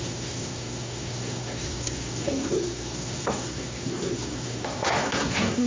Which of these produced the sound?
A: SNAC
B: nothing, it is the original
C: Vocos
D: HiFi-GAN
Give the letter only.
A